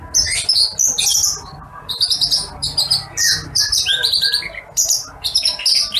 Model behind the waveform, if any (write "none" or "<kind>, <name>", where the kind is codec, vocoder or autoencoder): none